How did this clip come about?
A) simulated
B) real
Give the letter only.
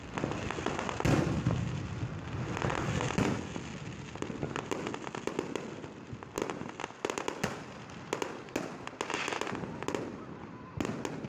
B